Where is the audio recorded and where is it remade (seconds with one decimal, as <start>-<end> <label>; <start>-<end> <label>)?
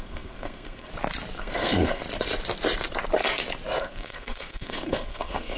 0.0-0.9 remade; 0.9-1.4 recorded; 1.4-2.0 remade; 2.0-3.8 recorded; 3.8-5.6 remade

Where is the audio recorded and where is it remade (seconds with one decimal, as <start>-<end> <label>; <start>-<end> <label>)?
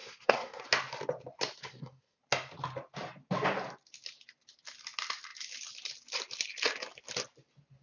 0.0-0.6 remade; 0.6-1.7 recorded; 1.7-2.2 remade; 2.2-7.8 recorded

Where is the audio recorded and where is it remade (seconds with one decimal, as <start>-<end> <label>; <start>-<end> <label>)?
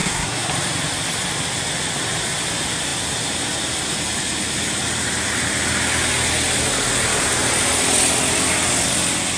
0.0-0.5 remade; 0.5-9.4 recorded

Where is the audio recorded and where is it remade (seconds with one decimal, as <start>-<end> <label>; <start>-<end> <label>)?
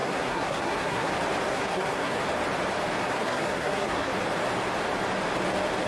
0.0-1.1 remade; 1.1-1.5 recorded; 1.5-2.2 remade; 2.2-3.0 recorded; 3.0-4.1 remade; 4.1-5.9 recorded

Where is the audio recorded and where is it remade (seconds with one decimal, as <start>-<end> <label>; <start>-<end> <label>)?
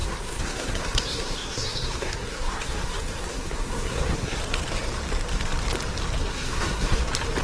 0.0-4.4 remade; 4.4-6.2 recorded; 6.2-7.0 remade; 7.0-7.4 recorded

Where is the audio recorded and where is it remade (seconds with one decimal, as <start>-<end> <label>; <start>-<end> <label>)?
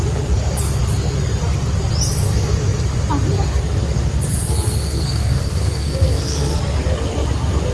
0.0-4.3 recorded; 4.3-6.6 remade; 6.6-7.7 recorded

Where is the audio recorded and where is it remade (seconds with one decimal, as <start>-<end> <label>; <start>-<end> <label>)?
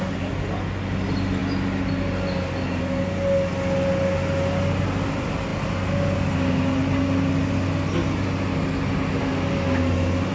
0.0-10.3 recorded